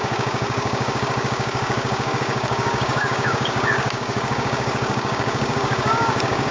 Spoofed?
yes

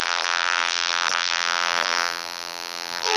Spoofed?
yes